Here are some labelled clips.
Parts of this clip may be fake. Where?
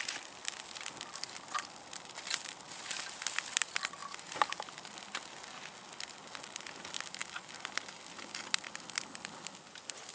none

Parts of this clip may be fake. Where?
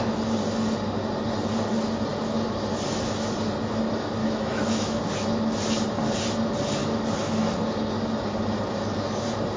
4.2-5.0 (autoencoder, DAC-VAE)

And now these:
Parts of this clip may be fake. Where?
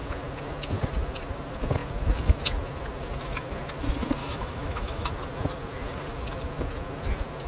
4.2-5.1 (autoencoder, DAC-VAE)